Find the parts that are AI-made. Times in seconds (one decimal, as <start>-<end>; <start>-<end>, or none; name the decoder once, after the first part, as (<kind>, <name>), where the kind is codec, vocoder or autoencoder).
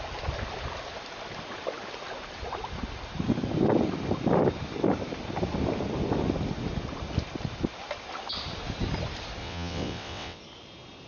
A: 9.4-10.4 (vocoder, WaveNeXt)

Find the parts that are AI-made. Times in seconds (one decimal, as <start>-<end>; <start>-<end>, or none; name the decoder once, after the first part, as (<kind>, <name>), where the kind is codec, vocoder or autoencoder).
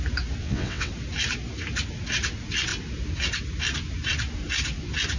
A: 0.4-0.9 (vocoder, WaveNeXt)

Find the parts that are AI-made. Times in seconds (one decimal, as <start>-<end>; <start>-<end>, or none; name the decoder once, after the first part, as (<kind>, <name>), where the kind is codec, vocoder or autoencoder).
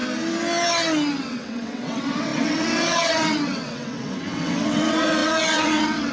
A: 1.1-6.1 (vocoder, WaveNeXt)